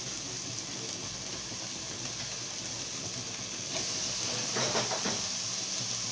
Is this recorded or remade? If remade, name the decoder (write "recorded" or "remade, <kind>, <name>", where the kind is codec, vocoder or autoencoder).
recorded